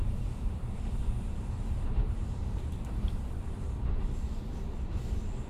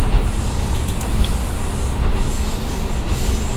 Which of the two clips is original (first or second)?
second